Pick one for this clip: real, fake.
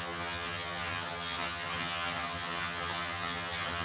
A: fake